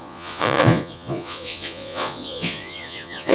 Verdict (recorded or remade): remade